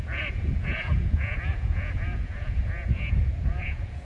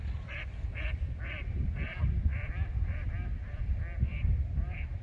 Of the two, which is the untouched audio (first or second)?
second